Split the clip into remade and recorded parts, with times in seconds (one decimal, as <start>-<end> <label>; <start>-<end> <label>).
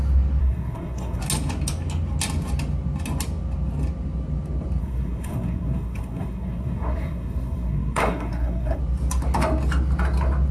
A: 0.0-0.4 recorded; 0.4-1.2 remade; 1.2-4.8 recorded; 4.8-8.8 remade; 8.8-10.5 recorded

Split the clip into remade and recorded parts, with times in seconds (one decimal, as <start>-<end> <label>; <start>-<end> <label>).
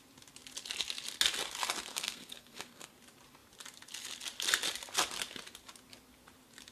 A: 0.0-1.9 recorded; 1.9-2.9 remade; 2.9-6.7 recorded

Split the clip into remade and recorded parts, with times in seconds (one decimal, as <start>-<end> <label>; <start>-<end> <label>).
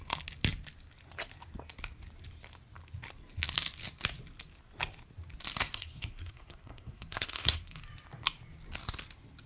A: 0.0-5.6 recorded; 5.6-7.8 remade; 7.8-9.5 recorded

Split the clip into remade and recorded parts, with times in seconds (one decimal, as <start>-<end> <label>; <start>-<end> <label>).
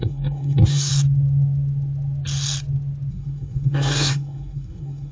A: 0.0-0.9 remade; 0.9-3.1 recorded; 3.1-5.1 remade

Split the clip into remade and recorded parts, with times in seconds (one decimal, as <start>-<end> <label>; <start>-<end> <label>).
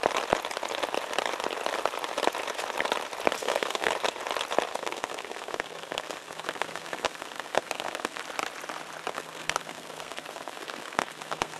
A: 0.0-3.4 recorded; 3.4-3.9 remade; 3.9-4.7 recorded; 4.7-8.2 remade; 8.2-9.1 recorded; 9.1-11.6 remade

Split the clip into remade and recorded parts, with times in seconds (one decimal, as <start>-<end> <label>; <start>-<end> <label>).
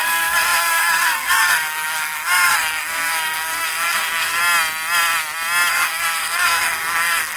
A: 0.0-4.4 remade; 4.4-5.7 recorded; 5.7-7.4 remade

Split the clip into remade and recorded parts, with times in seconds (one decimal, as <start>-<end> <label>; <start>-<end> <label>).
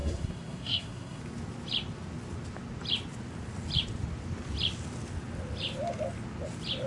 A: 0.0-1.2 remade; 1.2-6.9 recorded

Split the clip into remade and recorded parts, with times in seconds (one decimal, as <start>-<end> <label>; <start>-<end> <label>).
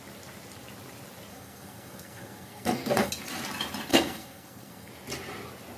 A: 0.0-1.3 recorded; 1.3-3.1 remade; 3.1-3.9 recorded; 3.9-4.9 remade; 4.9-5.8 recorded